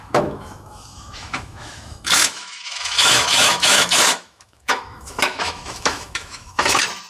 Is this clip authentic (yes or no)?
no